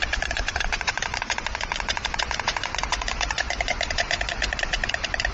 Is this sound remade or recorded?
remade